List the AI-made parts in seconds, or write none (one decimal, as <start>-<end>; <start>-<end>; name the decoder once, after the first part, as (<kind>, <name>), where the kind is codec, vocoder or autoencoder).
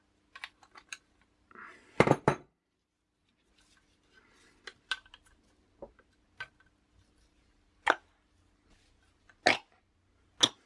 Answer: none